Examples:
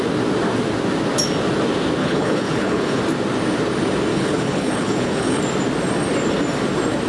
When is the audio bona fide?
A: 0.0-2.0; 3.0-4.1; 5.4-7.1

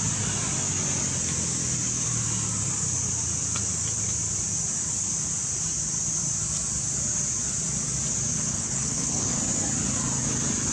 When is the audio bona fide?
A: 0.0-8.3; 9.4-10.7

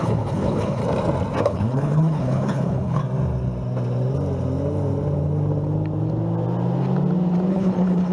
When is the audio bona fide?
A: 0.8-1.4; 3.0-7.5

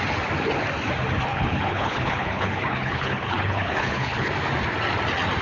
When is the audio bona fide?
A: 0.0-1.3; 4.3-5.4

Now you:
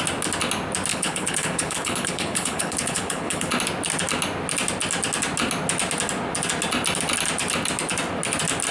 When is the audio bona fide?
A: 0.0-0.9; 3.5-8.7

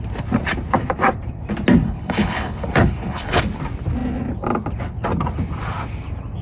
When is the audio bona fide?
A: 0.0-1.8; 3.4-6.4

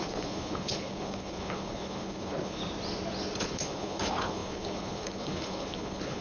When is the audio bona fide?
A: 2.6-3.4

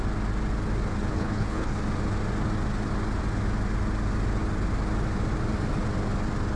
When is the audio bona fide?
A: 0.0-1.1; 1.8-6.6